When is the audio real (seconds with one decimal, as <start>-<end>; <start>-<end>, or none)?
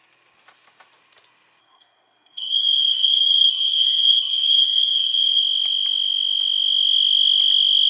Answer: 0.0-1.6; 5.4-7.9